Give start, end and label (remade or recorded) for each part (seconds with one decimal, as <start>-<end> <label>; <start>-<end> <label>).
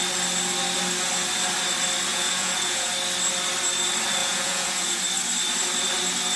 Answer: 0.0-2.1 recorded; 2.1-2.9 remade; 2.9-4.2 recorded; 4.2-5.0 remade; 5.0-6.4 recorded